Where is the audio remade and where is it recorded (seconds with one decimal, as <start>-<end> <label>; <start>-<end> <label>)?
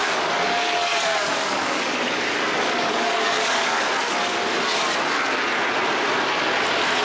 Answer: 0.0-3.9 remade; 3.9-7.0 recorded